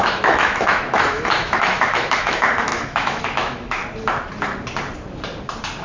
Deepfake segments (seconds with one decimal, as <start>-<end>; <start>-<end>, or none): 0.0-3.8